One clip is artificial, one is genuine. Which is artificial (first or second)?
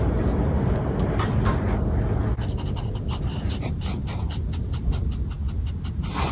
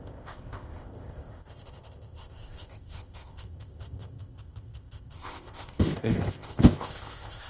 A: second